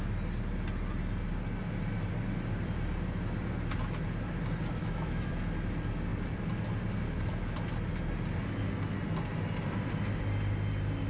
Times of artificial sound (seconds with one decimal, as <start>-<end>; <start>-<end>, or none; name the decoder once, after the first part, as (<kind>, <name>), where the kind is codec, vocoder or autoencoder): 4.8-5.3 (autoencoder, DAC-VAE)